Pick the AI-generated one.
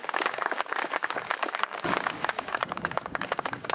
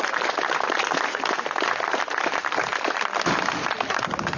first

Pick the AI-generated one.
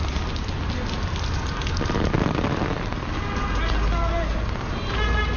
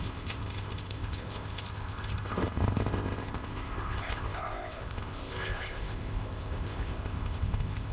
second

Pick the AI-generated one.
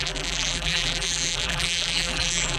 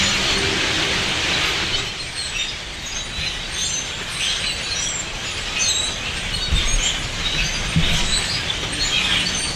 first